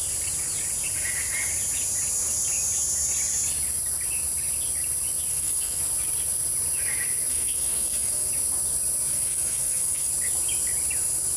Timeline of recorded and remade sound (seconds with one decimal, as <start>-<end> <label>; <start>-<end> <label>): 0.0-5.3 recorded; 5.3-5.8 remade; 5.8-7.3 recorded; 7.3-8.3 remade; 8.3-9.1 recorded; 9.1-10.1 remade; 10.1-11.4 recorded